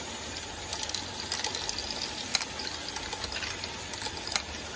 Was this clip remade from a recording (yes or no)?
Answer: no